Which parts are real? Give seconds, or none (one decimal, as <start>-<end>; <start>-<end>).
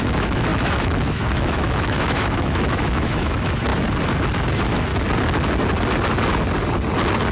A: 3.7-4.5; 4.9-7.3